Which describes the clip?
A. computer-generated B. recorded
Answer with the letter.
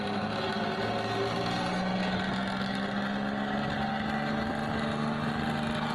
B